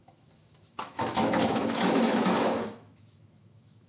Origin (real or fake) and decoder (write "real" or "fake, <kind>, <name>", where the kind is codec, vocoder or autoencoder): fake, autoencoder, DAC-VAE